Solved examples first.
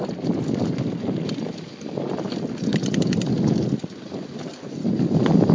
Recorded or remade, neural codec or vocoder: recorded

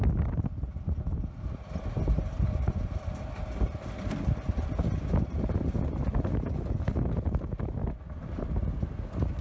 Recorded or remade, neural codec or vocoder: recorded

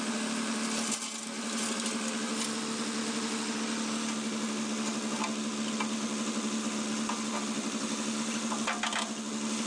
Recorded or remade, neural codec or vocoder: recorded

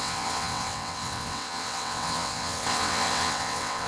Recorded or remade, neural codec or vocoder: remade, vocoder, WaveNeXt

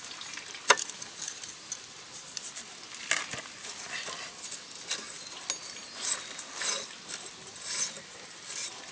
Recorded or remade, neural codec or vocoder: recorded